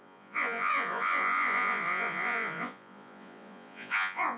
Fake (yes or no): yes